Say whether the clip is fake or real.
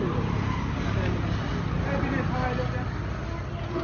real